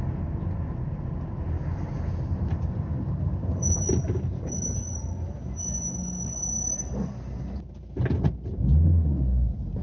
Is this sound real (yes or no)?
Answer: yes